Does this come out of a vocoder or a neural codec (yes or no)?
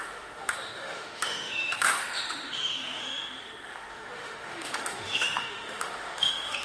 yes